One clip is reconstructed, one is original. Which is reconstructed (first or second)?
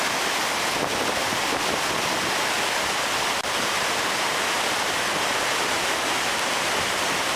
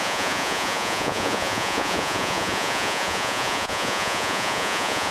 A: second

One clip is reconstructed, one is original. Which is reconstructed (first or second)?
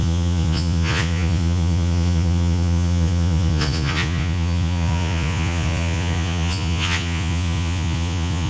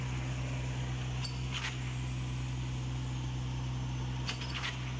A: first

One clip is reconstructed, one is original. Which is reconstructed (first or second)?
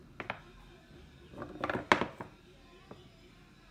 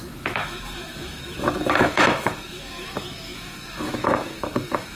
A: second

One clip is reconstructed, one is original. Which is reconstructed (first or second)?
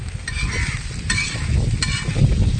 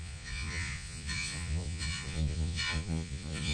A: second